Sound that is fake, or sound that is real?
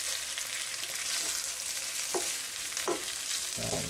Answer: real